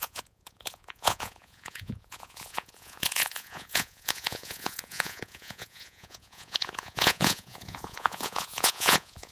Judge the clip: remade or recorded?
remade